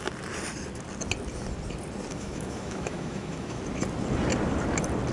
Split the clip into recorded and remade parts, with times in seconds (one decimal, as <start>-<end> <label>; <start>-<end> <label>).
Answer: 0.0-2.1 recorded; 2.1-3.6 remade; 3.6-5.1 recorded

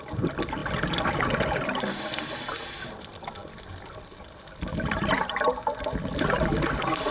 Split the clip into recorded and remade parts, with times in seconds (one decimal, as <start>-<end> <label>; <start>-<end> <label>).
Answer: 0.0-0.6 recorded; 0.6-2.3 remade; 2.3-7.1 recorded

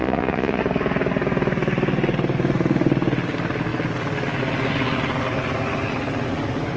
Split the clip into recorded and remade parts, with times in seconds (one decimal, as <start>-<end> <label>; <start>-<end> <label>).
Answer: 0.0-0.6 remade; 0.6-6.8 recorded